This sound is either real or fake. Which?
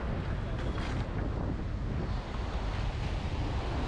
real